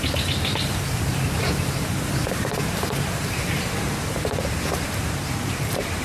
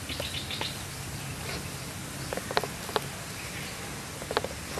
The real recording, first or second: second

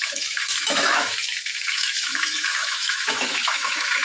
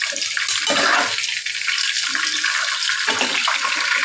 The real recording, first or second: second